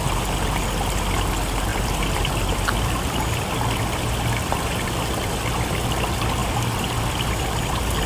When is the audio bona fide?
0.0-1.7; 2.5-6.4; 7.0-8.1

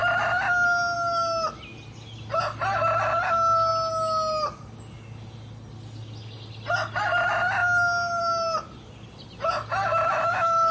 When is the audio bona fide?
0.0-10.1

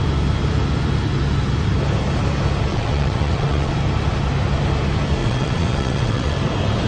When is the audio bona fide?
0.0-2.7; 3.7-5.2; 6.4-6.9